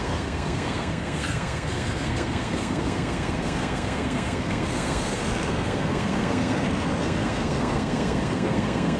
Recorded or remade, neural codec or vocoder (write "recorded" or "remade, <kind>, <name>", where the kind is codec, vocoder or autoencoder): remade, codec, SNAC